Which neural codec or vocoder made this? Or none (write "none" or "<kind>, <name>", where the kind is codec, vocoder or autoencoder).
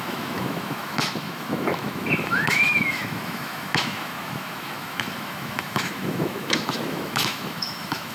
autoencoder, DAC-VAE